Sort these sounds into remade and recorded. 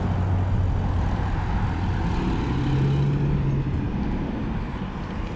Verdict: recorded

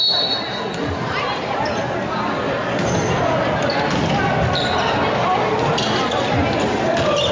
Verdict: recorded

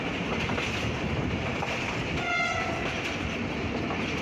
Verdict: recorded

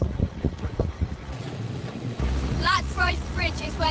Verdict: remade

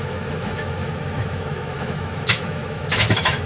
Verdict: remade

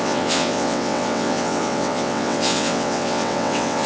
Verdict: remade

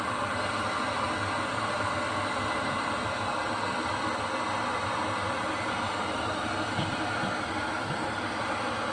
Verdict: recorded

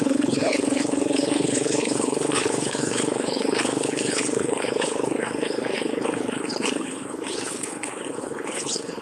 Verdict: remade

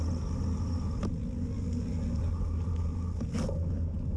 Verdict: recorded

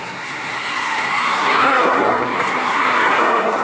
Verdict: remade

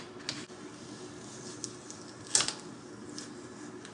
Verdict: recorded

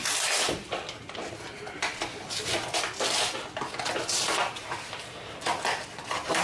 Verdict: recorded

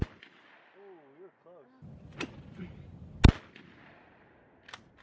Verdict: recorded